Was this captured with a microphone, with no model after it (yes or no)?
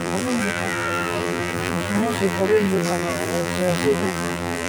no